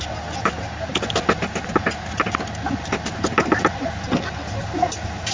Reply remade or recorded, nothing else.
recorded